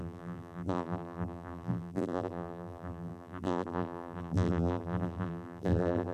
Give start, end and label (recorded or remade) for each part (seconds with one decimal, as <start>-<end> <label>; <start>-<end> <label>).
0.0-6.1 remade